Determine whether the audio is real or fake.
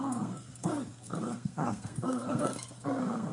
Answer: fake